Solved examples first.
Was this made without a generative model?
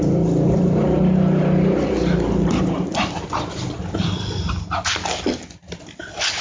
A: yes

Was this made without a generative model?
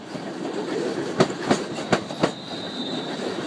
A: yes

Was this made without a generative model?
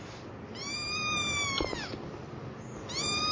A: yes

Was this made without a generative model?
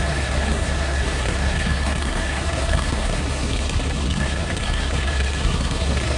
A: no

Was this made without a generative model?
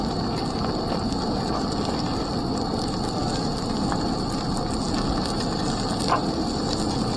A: yes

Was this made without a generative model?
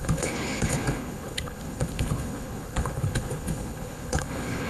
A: no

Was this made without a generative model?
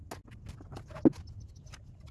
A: yes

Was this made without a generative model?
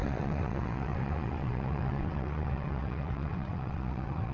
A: no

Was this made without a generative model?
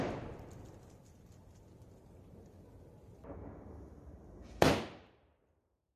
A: yes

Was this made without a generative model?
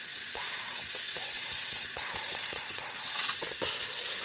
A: no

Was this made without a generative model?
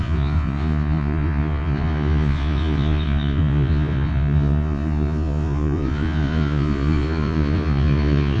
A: no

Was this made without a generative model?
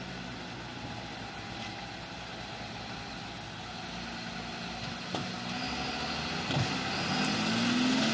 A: yes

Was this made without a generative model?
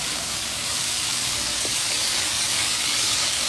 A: no